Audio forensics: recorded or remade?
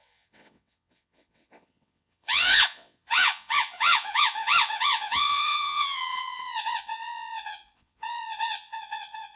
remade